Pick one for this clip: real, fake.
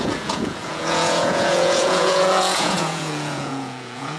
fake